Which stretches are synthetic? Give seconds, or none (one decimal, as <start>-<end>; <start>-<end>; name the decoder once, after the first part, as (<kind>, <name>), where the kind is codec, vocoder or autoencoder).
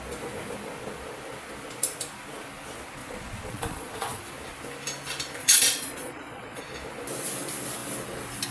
3.0-4.2 (vocoder, Vocos); 5.4-6.6